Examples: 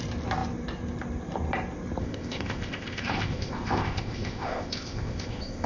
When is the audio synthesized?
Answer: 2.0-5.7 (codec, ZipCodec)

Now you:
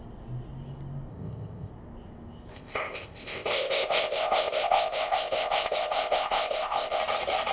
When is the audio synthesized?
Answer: 1.1-1.7 (codec, ZipCodec); 2.5-7.0

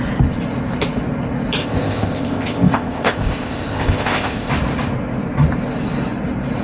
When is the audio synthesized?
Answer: 1.6-4.5 (codec, ZipCodec)

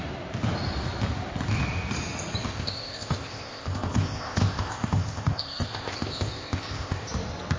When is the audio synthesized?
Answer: 2.5-7.1 (codec, ZipCodec)

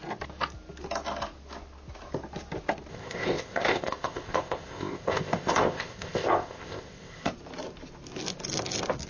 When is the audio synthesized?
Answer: 2.9-7.3 (codec, ZipCodec)

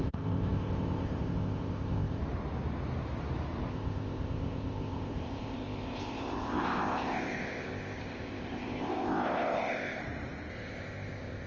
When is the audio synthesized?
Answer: 0.0-2.2 (codec, ZipCodec); 3.7-10.0; 10.5-11.5